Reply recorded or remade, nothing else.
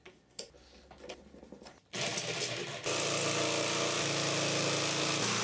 recorded